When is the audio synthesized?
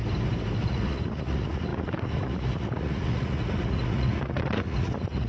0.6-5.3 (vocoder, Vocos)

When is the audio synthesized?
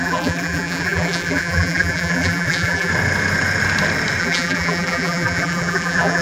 0.0-2.9 (vocoder, BigVGAN v2); 4.2-6.2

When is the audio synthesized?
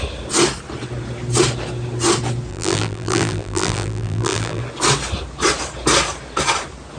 2.5-4.6 (vocoder, BigVGAN v2)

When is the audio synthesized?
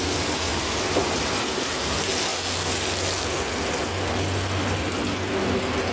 0.5-1.7 (vocoder, BigVGAN v2)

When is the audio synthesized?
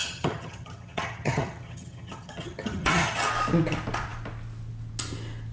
0.0-3.3 (vocoder, HiFi-GAN)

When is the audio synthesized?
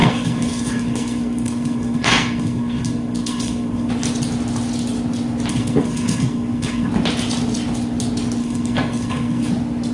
0.0-3.9 (codec, SNAC); 5.5-6.9; 8.4-9.5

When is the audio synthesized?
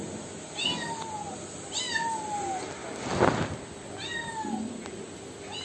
none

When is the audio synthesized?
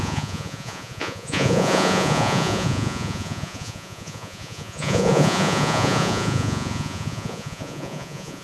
0.0-8.4 (vocoder, Vocos)